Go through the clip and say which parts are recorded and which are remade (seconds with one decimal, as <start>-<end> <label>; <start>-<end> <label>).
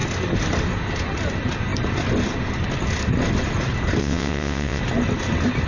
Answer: 0.0-4.0 recorded; 4.0-4.8 remade; 4.8-5.7 recorded